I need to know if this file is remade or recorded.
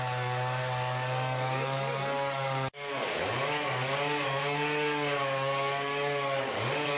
remade